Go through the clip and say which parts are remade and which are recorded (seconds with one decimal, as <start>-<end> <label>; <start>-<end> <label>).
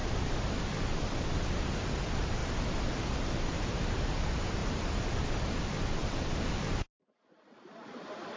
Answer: 0.0-2.4 recorded; 2.4-3.7 remade; 3.7-4.6 recorded; 4.6-5.2 remade; 5.2-8.4 recorded